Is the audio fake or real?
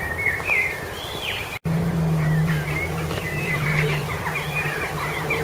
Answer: fake